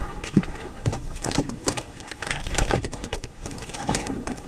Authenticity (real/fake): fake